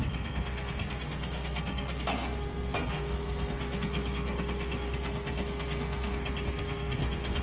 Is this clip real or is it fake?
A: fake